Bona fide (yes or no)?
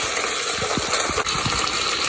yes